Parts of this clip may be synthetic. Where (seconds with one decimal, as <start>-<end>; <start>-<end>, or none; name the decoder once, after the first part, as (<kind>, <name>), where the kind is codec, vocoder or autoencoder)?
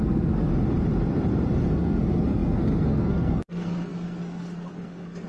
0.0-0.5 (codec, SNAC); 1.7-5.3